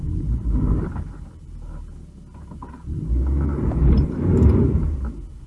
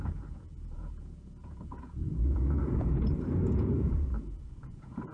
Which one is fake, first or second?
second